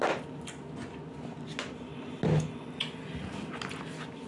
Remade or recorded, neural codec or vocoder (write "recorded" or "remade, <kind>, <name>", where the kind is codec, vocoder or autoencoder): recorded